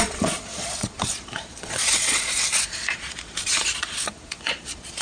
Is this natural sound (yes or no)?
no